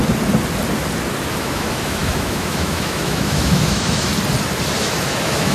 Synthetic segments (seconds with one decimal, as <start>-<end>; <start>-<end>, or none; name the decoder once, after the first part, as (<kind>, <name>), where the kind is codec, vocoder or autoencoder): 1.3-4.1 (autoencoder, DAC-VAE); 4.8-5.5